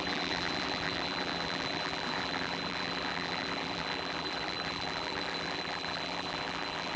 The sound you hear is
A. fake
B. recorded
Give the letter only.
A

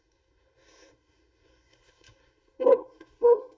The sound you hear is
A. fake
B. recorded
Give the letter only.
A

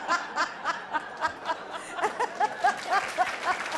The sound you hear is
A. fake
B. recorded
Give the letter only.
B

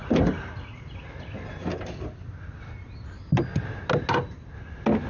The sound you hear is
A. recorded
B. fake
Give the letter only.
A